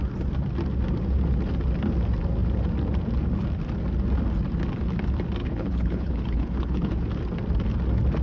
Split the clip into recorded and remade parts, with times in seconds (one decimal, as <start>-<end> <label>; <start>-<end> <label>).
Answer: 0.0-5.4 recorded; 5.4-6.9 remade; 6.9-8.2 recorded